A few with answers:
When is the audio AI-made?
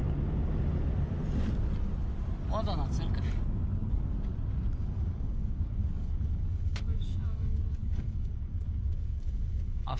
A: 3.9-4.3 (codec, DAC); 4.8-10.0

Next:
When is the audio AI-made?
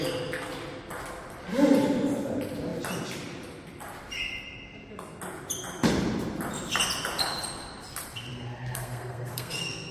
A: 8.3-9.9 (codec, SNAC)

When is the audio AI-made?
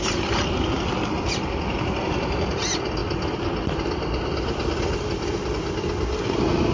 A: none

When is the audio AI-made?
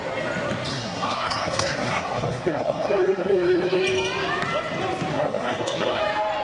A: 0.7-3.8 (codec, SNAC); 5.1-6.0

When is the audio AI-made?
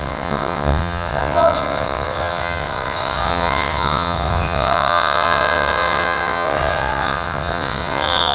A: 0.0-8.3 (vocoder, WaveNeXt)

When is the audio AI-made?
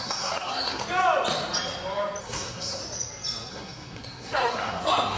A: 0.0-0.8 (codec, SNAC); 2.2-2.8; 3.5-5.2